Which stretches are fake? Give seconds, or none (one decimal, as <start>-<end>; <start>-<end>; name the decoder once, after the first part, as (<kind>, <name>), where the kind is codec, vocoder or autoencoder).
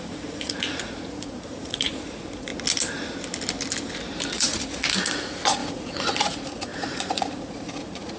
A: 0.0-2.5 (vocoder, Vocos); 4.3-8.2